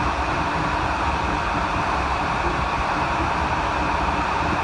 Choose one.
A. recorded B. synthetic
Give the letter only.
B